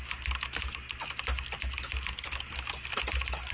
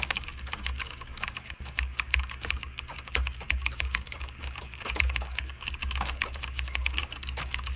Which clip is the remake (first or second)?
second